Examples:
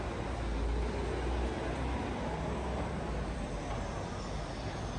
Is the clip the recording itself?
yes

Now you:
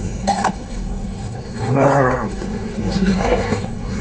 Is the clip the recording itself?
no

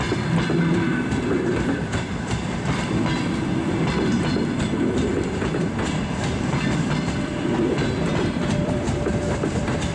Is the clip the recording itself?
no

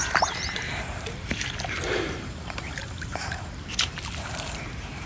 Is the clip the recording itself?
no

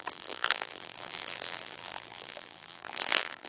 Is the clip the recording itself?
no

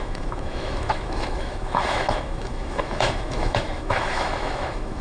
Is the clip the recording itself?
no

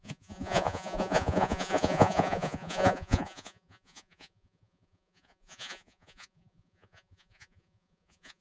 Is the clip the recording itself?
no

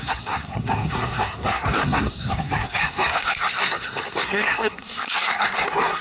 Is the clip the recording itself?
no